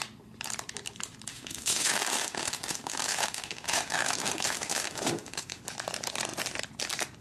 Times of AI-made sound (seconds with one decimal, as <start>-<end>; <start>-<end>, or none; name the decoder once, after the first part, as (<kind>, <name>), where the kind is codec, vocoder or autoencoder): 1.3-5.6 (autoencoder, DAC-VAE)